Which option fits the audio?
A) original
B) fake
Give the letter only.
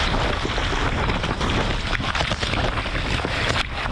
A